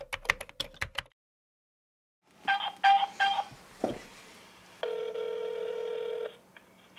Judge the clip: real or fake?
real